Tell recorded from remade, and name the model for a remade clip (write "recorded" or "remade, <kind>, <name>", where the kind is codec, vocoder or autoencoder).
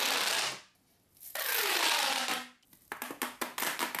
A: recorded